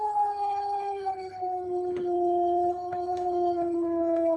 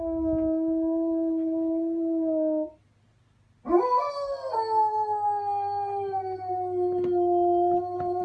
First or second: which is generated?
first